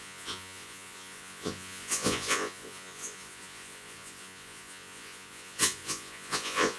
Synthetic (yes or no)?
yes